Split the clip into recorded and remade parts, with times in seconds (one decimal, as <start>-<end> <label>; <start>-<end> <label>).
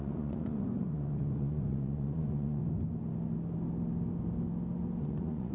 0.0-2.6 remade; 2.6-5.0 recorded; 5.0-5.5 remade